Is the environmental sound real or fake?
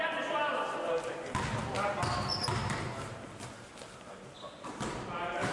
real